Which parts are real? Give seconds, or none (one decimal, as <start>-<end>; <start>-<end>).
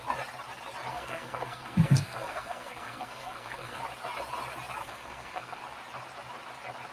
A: 0.0-0.9; 3.8-4.8; 5.6-6.9